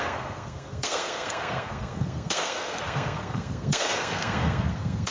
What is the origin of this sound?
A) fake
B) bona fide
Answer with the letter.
A